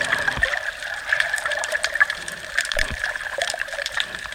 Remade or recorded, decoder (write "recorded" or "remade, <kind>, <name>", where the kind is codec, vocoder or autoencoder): remade, vocoder, BigVGAN v2